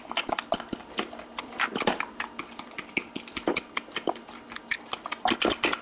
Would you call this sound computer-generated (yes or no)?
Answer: no